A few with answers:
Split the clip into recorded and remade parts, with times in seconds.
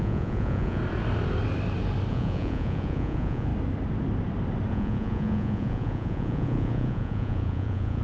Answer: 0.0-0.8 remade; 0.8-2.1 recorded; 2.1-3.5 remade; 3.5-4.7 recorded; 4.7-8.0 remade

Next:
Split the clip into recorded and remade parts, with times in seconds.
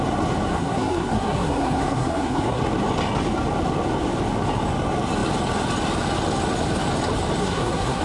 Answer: 0.0-0.5 recorded; 0.5-2.6 remade; 2.6-7.4 recorded; 7.4-8.0 remade